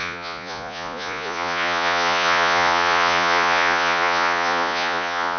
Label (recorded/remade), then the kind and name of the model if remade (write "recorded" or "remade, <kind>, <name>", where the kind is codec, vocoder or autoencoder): remade, vocoder, Vocos